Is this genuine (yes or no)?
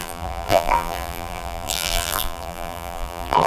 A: no